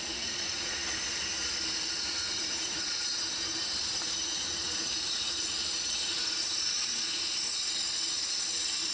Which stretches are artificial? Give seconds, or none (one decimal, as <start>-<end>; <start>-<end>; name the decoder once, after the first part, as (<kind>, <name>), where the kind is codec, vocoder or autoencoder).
0.0-0.8 (vocoder, Vocos); 2.0-3.1; 3.8-8.9